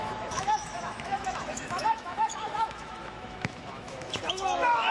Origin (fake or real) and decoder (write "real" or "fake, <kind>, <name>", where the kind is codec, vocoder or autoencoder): fake, autoencoder, DAC-VAE